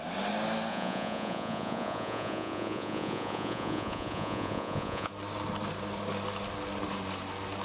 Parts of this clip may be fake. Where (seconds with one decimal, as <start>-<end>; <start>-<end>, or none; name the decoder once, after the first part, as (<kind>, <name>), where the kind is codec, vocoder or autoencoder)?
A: 0.7-5.1 (vocoder, Vocos)